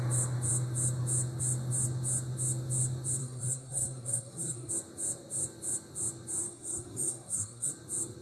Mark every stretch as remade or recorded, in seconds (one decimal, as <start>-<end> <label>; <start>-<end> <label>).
0.0-3.2 recorded; 3.2-4.7 remade; 4.7-6.4 recorded; 6.4-7.7 remade; 7.7-8.2 recorded